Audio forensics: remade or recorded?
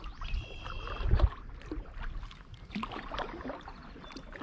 remade